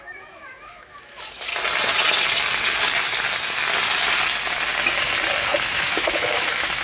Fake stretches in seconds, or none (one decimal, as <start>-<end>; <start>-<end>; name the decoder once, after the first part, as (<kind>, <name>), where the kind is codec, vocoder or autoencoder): 0.0-1.5 (autoencoder, DAC-VAE); 5.6-6.8